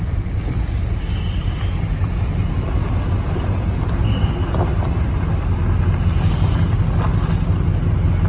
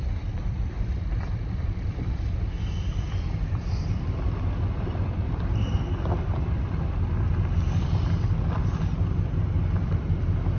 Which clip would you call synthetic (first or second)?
second